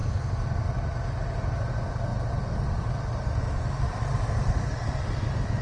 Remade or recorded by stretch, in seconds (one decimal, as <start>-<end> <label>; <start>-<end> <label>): 0.0-5.6 recorded